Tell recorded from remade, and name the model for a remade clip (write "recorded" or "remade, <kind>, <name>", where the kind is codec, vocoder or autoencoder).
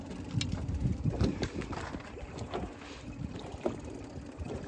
recorded